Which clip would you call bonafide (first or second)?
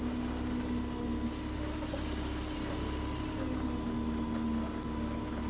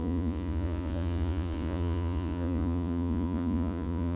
first